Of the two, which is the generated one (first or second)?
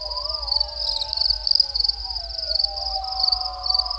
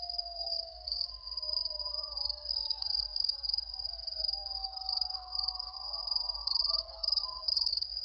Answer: second